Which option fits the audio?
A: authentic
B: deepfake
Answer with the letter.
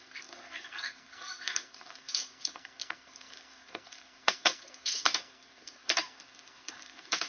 B